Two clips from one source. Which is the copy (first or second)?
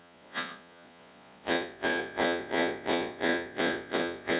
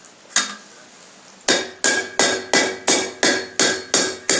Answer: first